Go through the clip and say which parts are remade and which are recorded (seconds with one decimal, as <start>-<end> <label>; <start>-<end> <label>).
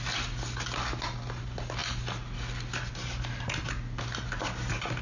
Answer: 0.0-5.0 recorded